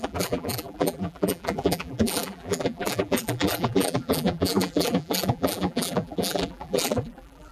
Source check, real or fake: fake